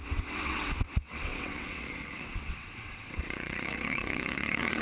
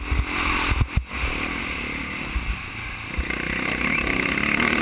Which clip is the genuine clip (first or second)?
second